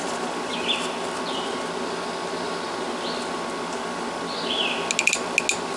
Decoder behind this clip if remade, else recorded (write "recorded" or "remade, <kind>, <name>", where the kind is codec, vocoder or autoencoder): recorded